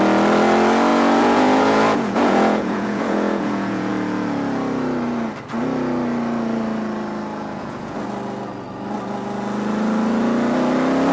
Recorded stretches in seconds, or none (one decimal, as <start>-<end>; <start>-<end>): 0.0-0.9; 3.9-7.3; 8.0-11.1